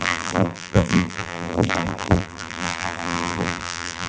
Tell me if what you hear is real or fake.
fake